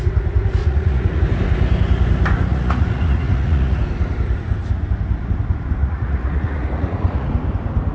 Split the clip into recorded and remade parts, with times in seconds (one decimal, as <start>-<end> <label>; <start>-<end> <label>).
0.0-0.6 recorded; 0.6-1.2 remade; 1.2-2.5 recorded; 2.5-3.8 remade; 3.8-5.8 recorded; 5.8-7.3 remade; 7.3-7.9 recorded